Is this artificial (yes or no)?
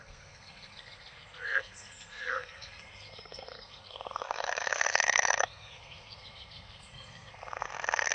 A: yes